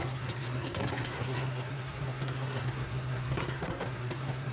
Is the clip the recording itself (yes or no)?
no